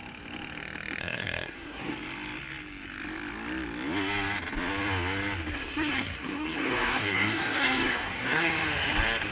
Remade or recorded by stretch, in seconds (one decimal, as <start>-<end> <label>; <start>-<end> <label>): 0.0-1.0 recorded; 1.0-1.9 remade; 1.9-5.5 recorded; 5.5-8.5 remade; 8.5-9.3 recorded